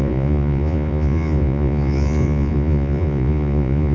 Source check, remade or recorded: remade